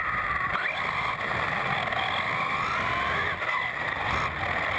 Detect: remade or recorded recorded